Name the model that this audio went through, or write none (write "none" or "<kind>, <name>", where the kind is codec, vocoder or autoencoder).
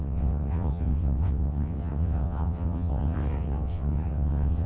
vocoder, WaveNeXt